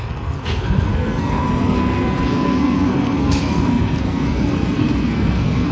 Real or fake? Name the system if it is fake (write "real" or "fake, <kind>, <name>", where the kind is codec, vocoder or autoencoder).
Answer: fake, codec, SNAC